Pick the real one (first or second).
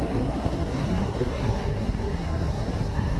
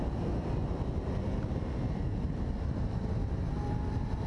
second